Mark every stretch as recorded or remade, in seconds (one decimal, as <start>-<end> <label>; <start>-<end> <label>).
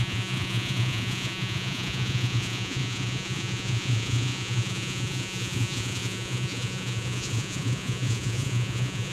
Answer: 0.0-9.1 remade